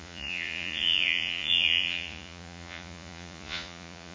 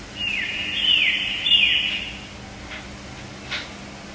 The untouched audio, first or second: second